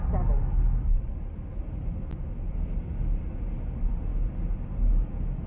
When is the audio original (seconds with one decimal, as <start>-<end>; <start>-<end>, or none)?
0.0-5.5